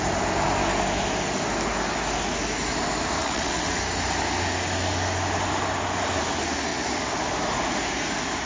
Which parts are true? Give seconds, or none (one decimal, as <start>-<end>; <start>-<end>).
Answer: 0.0-3.2; 3.8-8.5